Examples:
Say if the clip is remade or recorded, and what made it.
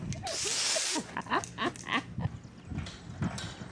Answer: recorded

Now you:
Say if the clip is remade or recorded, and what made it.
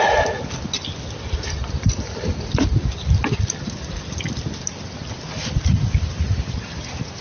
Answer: recorded